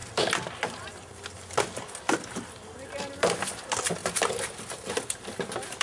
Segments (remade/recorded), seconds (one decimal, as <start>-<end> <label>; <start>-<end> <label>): 0.0-5.8 recorded